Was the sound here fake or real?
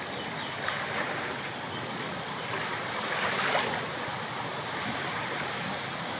real